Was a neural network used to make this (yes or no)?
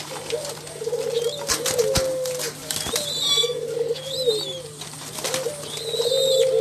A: no